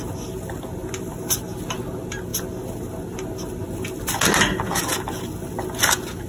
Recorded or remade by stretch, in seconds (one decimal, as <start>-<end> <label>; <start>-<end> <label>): 0.0-6.3 recorded